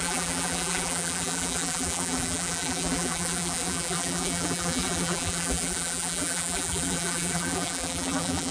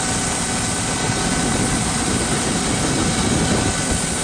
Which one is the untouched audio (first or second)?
second